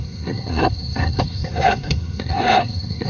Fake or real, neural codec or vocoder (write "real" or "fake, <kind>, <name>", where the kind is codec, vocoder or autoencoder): fake, codec, SNAC